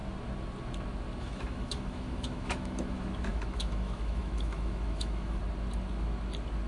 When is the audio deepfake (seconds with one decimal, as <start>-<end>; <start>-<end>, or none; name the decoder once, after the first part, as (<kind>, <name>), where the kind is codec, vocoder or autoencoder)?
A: 1.2-5.4 (autoencoder, DAC-VAE)

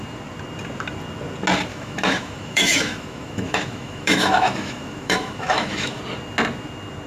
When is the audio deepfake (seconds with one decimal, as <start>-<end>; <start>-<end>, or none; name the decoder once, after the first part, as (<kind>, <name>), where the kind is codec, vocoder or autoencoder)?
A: 1.7-6.0 (autoencoder, DAC-VAE)

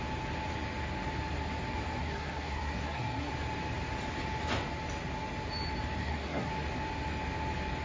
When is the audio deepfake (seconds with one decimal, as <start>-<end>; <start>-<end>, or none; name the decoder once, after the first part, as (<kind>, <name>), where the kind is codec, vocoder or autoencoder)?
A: 2.0-3.3 (codec, SNAC); 6.0-6.5

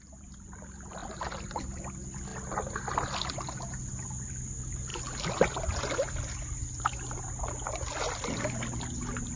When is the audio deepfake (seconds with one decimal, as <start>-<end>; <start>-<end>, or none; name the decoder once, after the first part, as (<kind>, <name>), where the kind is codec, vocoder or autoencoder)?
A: 1.0-1.6 (vocoder, BigVGAN v2)

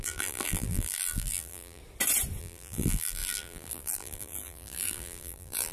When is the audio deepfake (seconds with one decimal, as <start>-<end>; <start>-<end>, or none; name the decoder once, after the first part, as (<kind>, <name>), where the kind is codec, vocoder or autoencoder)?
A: 0.0-1.8 (vocoder, BigVGAN v2); 2.4-5.7

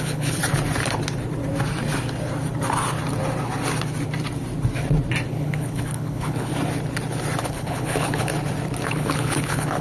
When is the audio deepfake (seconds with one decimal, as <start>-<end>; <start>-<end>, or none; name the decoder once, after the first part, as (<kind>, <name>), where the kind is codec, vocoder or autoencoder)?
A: 0.0-0.4 (codec, HILCodec); 5.3-6.5; 7.4-8.3; 8.9-9.8

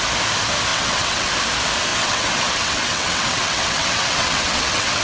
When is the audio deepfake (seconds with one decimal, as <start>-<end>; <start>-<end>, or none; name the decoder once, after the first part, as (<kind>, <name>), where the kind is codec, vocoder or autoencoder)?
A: 0.7-1.3 (vocoder, WaveNeXt); 1.9-5.0

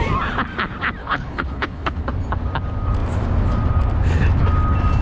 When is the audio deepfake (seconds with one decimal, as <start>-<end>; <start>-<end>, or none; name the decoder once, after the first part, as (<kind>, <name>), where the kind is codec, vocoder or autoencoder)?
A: 1.0-2.0 (codec, HILCodec)